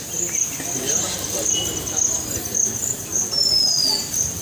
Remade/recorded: recorded